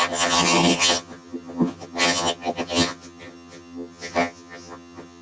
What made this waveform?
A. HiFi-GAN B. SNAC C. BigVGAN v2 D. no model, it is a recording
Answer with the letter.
A